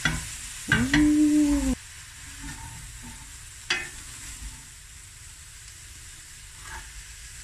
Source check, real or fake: real